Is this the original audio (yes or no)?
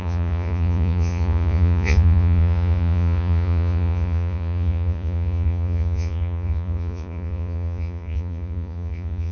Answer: no